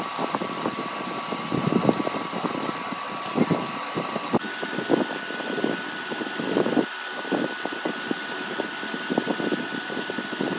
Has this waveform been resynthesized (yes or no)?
no